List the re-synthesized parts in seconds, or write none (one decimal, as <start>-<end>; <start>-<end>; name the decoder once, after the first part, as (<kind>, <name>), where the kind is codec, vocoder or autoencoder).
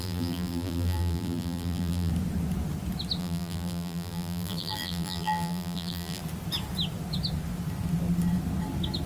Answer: 0.0-2.1 (vocoder, BigVGAN v2); 3.2-6.2